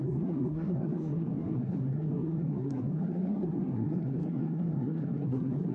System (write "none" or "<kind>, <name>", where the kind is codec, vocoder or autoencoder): codec, SNAC